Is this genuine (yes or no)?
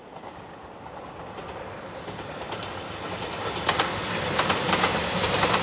yes